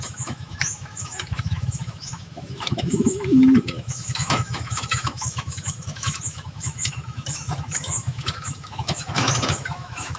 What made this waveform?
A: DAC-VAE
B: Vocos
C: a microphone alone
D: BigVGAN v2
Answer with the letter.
A